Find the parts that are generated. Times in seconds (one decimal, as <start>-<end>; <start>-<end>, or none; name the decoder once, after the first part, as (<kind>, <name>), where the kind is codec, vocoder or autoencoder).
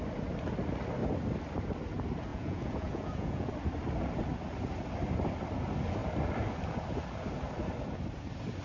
2.3-3.5 (vocoder, Vocos)